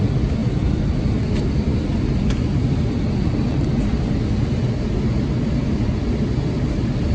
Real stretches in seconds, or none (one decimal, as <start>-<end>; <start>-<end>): 0.0-7.1